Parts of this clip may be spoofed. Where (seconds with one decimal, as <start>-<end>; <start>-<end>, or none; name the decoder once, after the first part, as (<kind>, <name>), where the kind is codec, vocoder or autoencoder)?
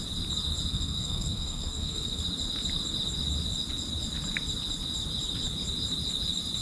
0.7-2.2 (codec, SNAC)